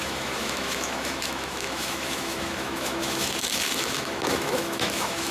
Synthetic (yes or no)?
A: yes